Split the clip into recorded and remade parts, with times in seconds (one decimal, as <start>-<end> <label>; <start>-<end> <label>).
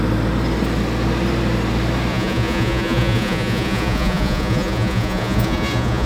0.0-2.1 recorded; 2.1-6.1 remade